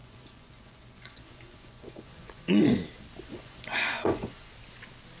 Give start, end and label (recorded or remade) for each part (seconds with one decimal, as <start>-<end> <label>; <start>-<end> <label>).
0.0-2.6 remade; 2.6-3.3 recorded; 3.3-4.5 remade; 4.5-5.2 recorded